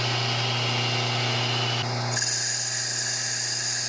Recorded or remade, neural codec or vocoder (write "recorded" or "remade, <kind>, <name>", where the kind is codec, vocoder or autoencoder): recorded